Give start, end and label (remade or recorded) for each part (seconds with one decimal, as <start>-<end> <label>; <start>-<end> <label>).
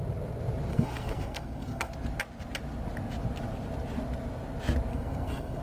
0.0-0.7 recorded; 0.7-1.9 remade; 1.9-4.9 recorded; 4.9-5.6 remade